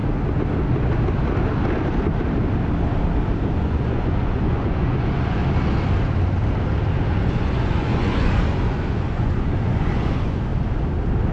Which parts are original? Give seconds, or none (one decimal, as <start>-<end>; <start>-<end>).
0.0-3.6; 5.4-7.1; 10.5-11.3